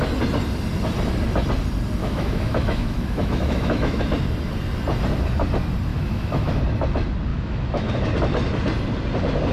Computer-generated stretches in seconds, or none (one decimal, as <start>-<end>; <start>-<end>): 2.0-4.0; 5.9-6.6; 7.3-7.9